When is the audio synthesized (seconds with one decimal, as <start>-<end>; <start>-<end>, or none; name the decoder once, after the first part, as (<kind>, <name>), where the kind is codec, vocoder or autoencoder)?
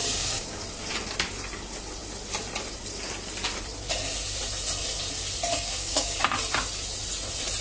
0.0-0.6 (codec, DAC); 5.5-6.2